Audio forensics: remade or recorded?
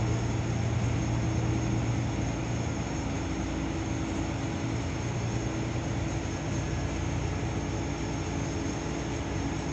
recorded